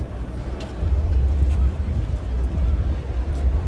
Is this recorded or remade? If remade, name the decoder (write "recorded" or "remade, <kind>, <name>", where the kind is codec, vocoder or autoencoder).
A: remade, vocoder, BigVGAN v2